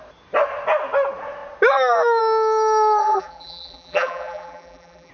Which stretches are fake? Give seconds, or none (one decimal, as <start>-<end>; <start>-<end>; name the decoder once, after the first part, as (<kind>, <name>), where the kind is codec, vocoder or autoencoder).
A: 3.0-5.1 (vocoder, BigVGAN v2)